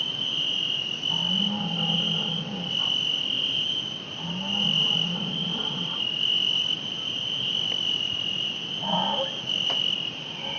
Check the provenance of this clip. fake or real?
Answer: real